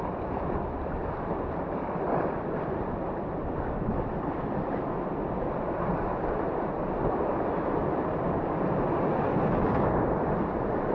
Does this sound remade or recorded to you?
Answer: recorded